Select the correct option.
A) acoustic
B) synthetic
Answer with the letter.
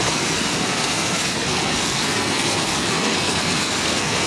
B